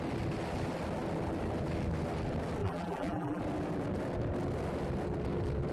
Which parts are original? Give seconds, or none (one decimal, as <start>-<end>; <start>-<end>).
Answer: 0.0-2.6; 3.4-5.7